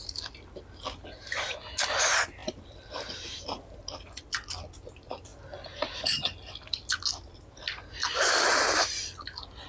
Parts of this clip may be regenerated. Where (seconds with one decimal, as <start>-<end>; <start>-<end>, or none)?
2.4-4.2